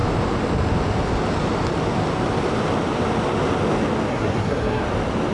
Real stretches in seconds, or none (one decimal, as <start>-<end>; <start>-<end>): 0.0-4.1; 4.8-5.3